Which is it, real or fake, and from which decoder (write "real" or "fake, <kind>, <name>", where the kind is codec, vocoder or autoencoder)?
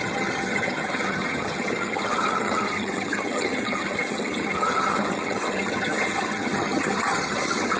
fake, vocoder, HiFi-GAN